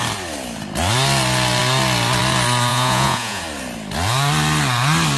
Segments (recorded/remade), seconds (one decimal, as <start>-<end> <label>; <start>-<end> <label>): 0.0-2.7 recorded; 2.7-3.4 remade; 3.4-5.2 recorded